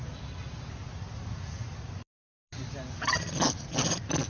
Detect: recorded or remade recorded